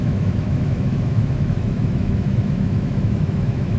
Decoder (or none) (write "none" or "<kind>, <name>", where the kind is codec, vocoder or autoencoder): autoencoder, DAC-VAE